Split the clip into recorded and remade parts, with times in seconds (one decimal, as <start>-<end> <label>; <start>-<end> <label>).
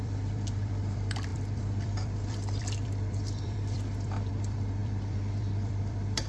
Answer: 0.0-6.3 remade